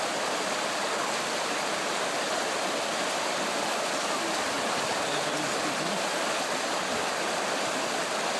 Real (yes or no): yes